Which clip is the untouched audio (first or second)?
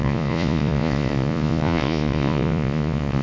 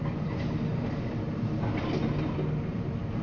second